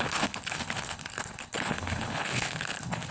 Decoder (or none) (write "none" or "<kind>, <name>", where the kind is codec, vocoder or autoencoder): codec, HILCodec